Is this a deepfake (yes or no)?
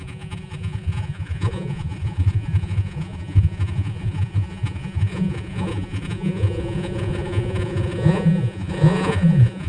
yes